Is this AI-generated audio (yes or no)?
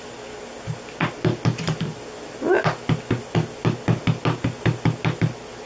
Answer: no